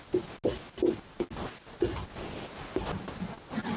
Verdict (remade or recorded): recorded